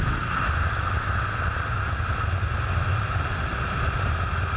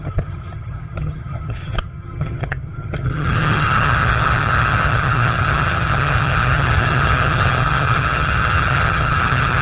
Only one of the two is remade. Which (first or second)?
second